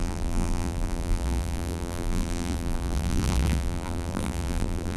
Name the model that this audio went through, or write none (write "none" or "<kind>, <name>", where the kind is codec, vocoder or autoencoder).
vocoder, BigVGAN v2